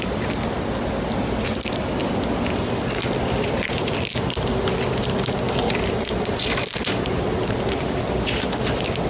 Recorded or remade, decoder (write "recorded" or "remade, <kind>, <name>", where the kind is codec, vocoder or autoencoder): recorded